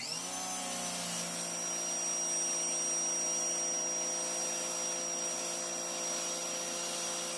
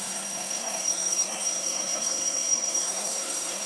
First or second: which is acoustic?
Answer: first